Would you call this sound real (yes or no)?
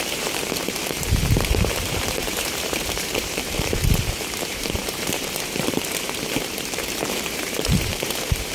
no